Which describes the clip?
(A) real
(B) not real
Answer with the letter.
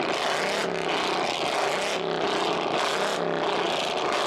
A